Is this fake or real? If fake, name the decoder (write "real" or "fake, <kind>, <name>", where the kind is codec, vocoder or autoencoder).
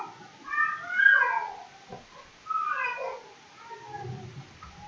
real